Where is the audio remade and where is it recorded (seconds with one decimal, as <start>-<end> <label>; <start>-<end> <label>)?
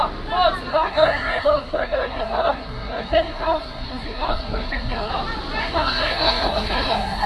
0.0-0.7 recorded; 0.7-5.1 remade; 5.1-5.6 recorded; 5.6-7.3 remade